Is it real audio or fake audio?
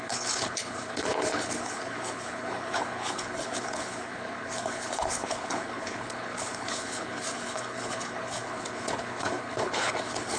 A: fake